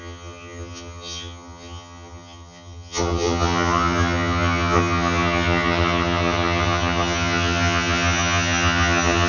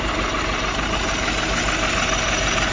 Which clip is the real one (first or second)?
second